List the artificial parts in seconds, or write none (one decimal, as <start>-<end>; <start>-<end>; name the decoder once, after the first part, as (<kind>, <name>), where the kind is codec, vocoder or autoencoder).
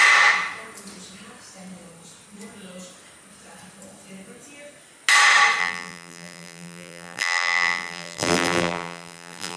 5.6-9.6 (vocoder, BigVGAN v2)